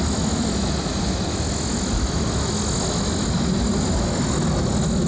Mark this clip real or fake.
real